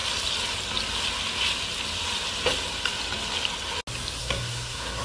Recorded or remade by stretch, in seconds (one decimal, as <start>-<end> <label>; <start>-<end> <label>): 0.0-4.2 recorded; 4.2-5.0 remade